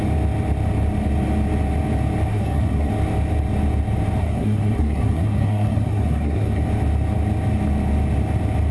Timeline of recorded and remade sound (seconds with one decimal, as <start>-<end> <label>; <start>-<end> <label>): 0.0-2.3 recorded; 2.3-2.9 remade; 2.9-4.2 recorded; 4.2-6.6 remade; 6.6-8.7 recorded